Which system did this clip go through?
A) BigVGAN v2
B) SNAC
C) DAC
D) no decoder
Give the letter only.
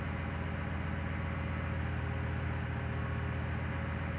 D